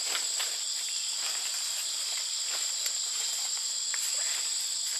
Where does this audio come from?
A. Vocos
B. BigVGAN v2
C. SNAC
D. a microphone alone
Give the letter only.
B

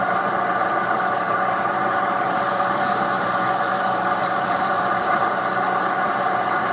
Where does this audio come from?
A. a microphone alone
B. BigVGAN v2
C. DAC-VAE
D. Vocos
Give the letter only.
B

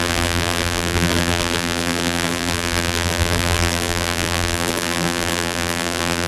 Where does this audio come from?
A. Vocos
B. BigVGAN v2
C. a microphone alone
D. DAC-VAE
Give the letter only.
B